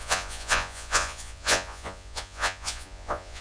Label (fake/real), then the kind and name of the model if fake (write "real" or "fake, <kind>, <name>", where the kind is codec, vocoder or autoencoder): fake, vocoder, Vocos